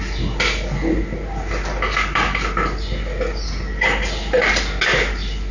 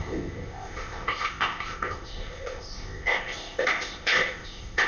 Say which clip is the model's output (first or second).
second